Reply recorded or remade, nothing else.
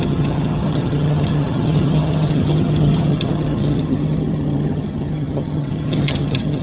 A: remade